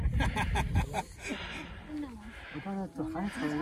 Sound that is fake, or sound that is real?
real